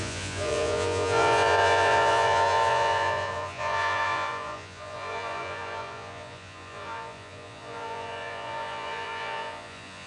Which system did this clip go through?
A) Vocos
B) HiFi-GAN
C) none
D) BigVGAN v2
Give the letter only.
A